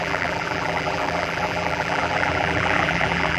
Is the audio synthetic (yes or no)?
yes